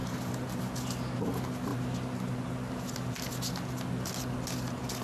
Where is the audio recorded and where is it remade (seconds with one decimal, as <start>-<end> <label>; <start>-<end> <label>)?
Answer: 0.0-0.6 remade; 0.6-5.0 recorded